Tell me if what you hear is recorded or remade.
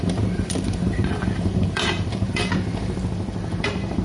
remade